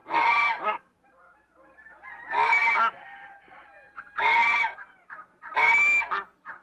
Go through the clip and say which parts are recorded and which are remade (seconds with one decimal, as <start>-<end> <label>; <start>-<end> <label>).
0.0-1.1 remade; 1.1-2.6 recorded; 2.6-4.1 remade; 4.1-6.6 recorded